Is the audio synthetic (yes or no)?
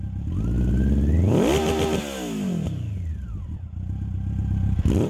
no